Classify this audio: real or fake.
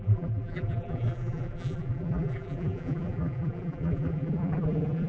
fake